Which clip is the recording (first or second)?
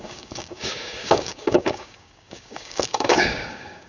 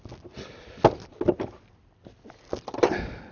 second